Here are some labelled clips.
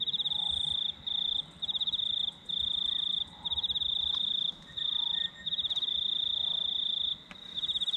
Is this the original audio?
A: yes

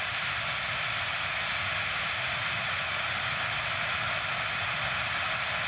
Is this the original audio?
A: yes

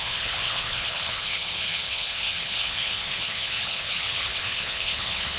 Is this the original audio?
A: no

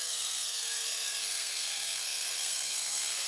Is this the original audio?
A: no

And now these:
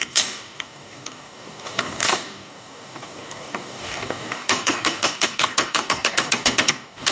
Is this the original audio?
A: no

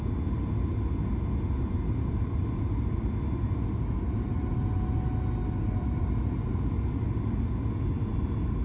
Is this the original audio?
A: yes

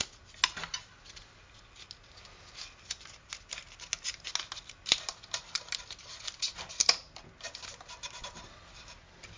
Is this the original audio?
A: yes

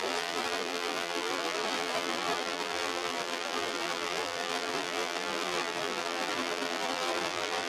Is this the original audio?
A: no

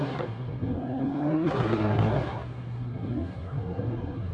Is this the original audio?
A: no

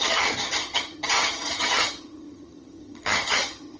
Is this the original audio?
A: no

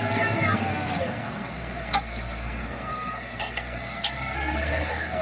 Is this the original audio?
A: no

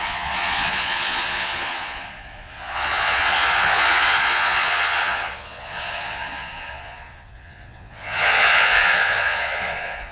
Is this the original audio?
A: no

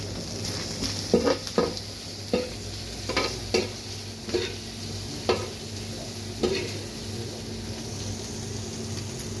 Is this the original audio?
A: yes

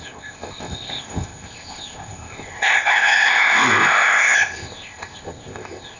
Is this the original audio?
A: no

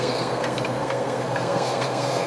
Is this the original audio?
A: no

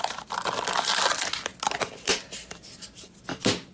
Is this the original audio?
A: yes